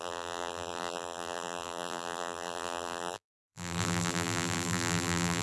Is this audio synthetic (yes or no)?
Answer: yes